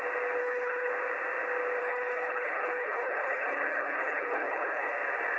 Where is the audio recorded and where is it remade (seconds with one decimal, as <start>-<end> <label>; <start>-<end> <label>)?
0.0-0.4 recorded; 0.4-0.9 remade; 0.9-1.8 recorded; 1.8-4.9 remade; 4.9-5.4 recorded